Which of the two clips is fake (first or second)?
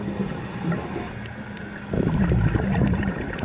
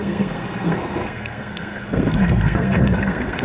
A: second